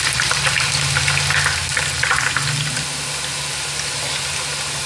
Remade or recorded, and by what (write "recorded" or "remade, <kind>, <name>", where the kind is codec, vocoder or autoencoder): recorded